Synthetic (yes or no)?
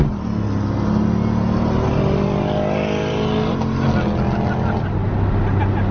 no